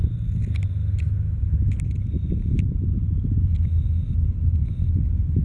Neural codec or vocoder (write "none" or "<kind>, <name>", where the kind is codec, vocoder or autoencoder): none